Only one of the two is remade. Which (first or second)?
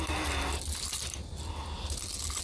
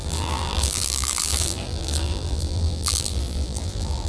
second